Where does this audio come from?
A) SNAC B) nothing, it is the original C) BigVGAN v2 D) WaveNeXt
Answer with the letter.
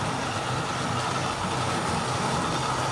B